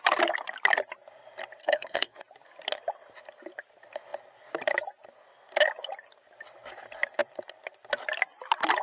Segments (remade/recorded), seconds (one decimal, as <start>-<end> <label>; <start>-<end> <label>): 0.0-1.6 recorded; 1.6-2.2 remade; 2.2-8.8 recorded